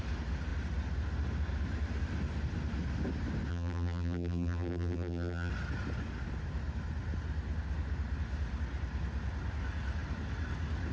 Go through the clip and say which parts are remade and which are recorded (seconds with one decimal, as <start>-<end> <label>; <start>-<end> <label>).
0.0-3.5 recorded; 3.5-5.5 remade; 5.5-10.9 recorded